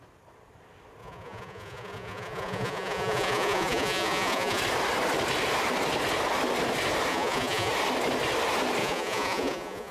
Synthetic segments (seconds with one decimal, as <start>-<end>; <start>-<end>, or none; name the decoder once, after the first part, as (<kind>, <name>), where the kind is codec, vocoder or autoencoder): 1.0-4.6 (vocoder, Vocos); 7.1-7.7; 8.8-9.9